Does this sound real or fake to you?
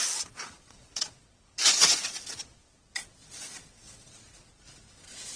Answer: fake